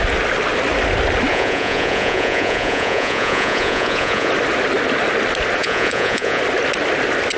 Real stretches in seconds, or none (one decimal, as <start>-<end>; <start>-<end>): 0.0-1.3; 4.3-5.6; 6.4-7.4